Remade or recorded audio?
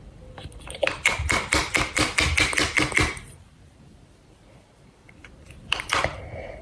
remade